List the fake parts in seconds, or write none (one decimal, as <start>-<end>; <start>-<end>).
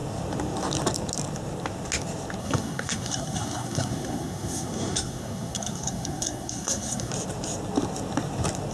2.4-7.1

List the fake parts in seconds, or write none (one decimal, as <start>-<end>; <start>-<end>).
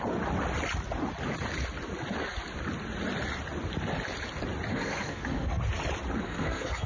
4.7-5.6; 6.2-6.9